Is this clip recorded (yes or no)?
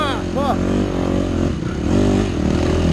yes